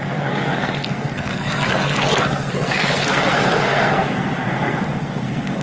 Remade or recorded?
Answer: remade